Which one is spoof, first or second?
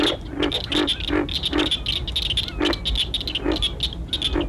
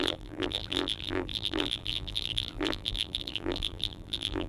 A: second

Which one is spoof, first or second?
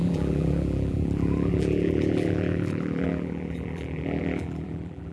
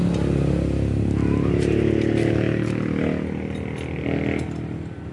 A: first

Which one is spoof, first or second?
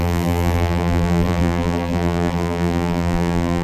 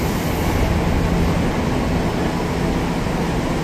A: first